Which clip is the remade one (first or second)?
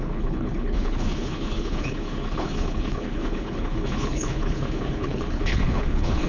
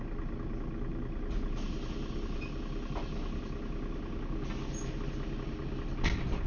first